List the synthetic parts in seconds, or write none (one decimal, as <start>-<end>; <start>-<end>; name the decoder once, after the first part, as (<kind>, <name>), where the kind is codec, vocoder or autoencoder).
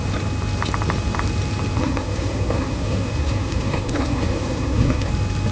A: 1.8-5.1 (codec, SNAC)